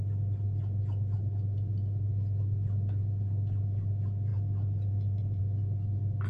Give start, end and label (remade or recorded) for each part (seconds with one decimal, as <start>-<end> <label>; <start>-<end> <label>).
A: 0.0-6.3 recorded